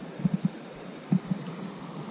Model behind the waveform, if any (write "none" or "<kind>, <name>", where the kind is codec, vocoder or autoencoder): none